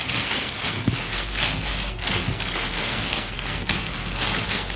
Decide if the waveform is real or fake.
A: fake